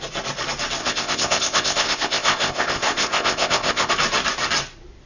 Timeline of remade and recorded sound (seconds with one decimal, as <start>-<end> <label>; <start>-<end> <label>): 0.0-0.8 recorded; 0.8-3.9 remade; 3.9-5.1 recorded